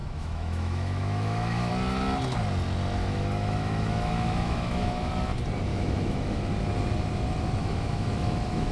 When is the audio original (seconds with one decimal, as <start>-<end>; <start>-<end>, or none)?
1.7-3.0; 5.1-5.7; 6.5-7.6